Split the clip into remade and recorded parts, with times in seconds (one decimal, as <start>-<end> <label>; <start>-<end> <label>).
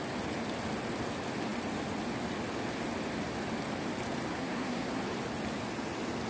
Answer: 0.0-4.3 recorded; 4.3-5.0 remade; 5.0-6.3 recorded